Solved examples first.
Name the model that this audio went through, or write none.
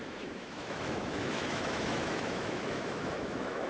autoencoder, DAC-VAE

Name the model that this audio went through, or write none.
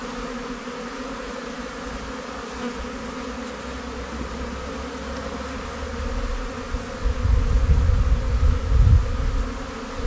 none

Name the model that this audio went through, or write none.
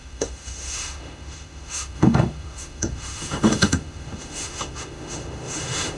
autoencoder, DAC-VAE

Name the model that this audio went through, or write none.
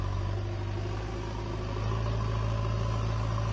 none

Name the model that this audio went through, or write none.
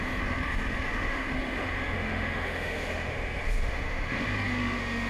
autoencoder, DAC-VAE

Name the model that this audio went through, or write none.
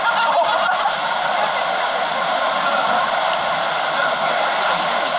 none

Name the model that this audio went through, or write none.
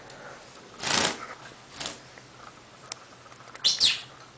none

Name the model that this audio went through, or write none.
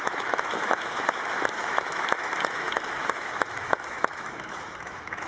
autoencoder, DAC-VAE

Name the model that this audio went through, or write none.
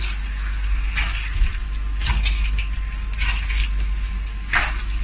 none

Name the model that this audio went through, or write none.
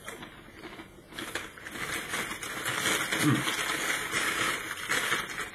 none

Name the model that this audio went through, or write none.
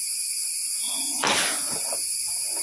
none